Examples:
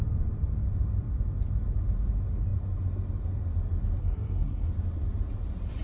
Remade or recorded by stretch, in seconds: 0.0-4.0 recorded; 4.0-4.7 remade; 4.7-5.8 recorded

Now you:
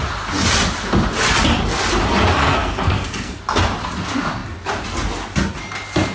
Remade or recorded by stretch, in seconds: 0.0-2.4 recorded; 2.4-3.4 remade; 3.4-6.1 recorded

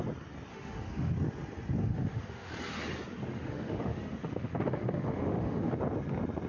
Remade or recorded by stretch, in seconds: 0.0-0.5 recorded; 0.5-1.1 remade; 1.1-1.8 recorded; 1.8-2.5 remade; 2.5-3.3 recorded; 3.3-5.7 remade; 5.7-6.5 recorded

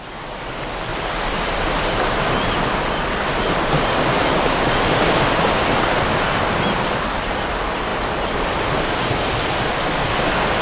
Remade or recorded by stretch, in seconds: 0.0-0.9 recorded; 0.9-1.6 remade; 1.6-10.6 recorded